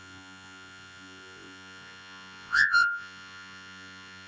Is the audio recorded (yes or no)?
no